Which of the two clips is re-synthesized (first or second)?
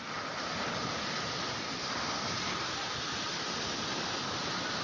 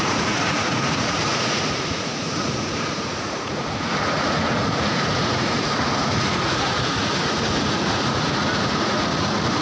second